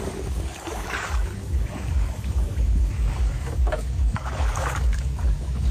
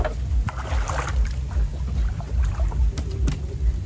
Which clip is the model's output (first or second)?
first